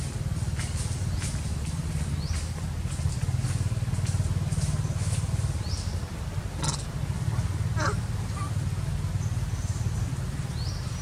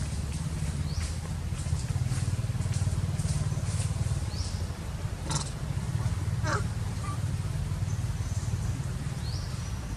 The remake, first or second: second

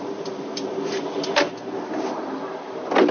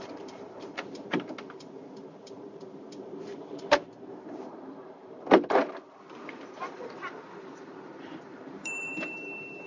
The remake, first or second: second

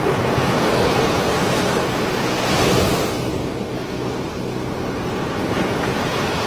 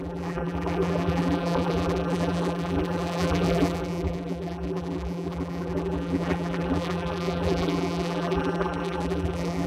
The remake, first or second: second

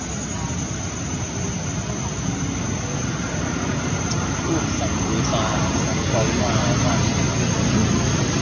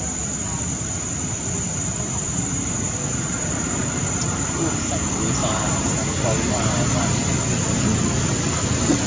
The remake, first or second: second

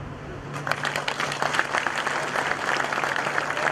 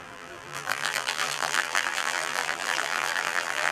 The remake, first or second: second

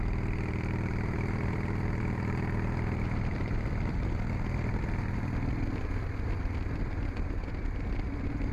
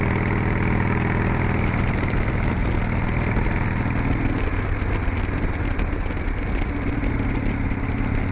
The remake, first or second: first